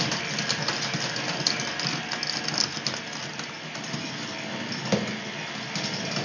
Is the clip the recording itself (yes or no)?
yes